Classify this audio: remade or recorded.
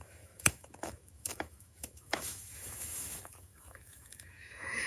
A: remade